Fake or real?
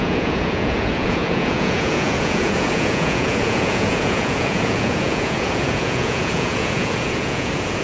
fake